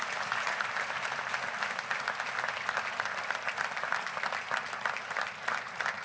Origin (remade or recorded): recorded